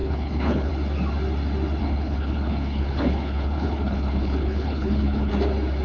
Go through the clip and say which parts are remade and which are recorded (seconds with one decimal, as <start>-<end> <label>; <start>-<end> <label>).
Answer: 0.0-0.7 remade; 0.7-1.8 recorded; 1.8-5.3 remade; 5.3-5.8 recorded